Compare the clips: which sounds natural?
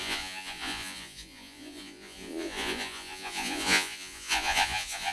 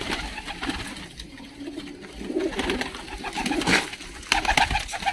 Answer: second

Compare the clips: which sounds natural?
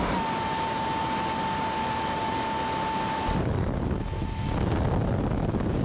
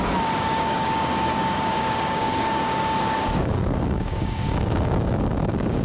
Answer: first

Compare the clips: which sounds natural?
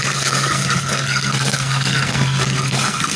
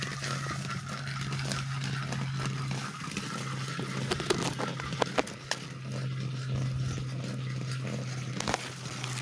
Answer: second